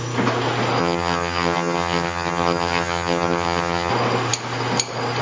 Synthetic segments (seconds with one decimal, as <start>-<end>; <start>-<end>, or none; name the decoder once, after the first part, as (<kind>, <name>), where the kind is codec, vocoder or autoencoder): 0.8-3.9 (vocoder, HiFi-GAN)